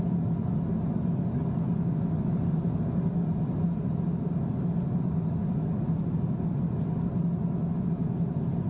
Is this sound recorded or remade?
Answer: recorded